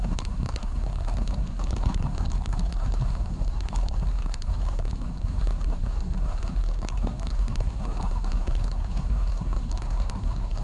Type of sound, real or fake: fake